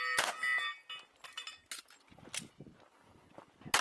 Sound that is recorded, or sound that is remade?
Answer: recorded